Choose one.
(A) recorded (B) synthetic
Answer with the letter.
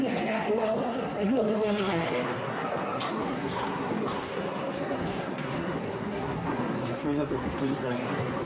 B